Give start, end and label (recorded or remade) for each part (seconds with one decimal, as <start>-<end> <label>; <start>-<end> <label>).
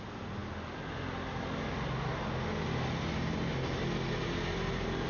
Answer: 0.0-5.1 recorded